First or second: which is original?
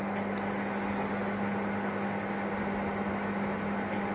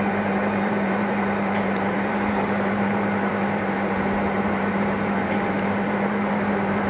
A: first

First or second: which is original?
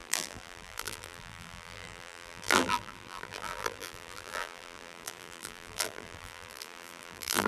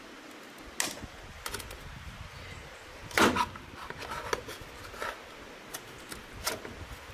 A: second